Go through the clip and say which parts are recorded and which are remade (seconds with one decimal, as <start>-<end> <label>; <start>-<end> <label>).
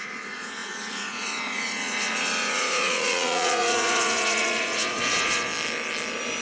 0.0-5.5 remade; 5.5-6.4 recorded